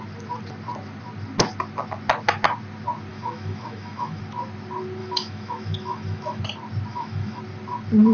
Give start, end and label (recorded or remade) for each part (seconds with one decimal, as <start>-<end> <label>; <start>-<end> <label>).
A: 0.0-3.1 recorded; 3.1-4.2 remade; 4.2-5.0 recorded; 5.0-6.4 remade; 6.4-6.9 recorded; 6.9-7.4 remade; 7.4-8.1 recorded